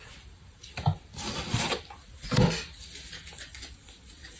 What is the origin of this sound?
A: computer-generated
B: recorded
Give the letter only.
B